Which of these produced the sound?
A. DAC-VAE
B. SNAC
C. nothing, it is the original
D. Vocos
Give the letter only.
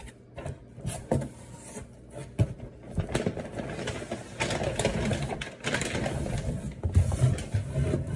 C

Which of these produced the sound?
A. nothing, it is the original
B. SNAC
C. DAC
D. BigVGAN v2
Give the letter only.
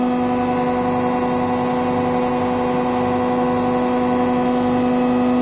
A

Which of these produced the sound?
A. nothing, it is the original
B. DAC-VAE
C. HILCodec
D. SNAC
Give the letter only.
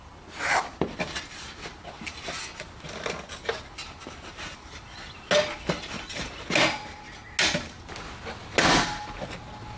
A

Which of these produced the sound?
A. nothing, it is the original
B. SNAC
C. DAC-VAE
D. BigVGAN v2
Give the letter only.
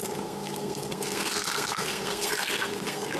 B